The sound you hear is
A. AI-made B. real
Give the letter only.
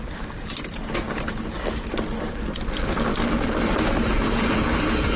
B